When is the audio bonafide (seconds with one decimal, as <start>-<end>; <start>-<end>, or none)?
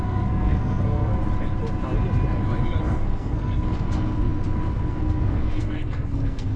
1.1-2.8